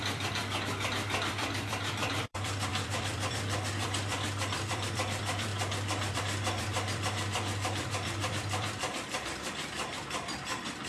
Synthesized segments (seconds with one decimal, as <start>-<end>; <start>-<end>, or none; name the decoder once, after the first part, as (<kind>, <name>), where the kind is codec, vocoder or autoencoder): 0.0-0.4 (vocoder, BigVGAN v2); 1.3-5.5; 6.1-10.9